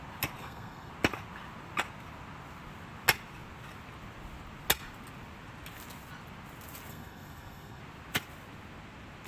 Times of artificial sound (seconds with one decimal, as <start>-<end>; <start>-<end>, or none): 0.4-0.9; 6.9-7.8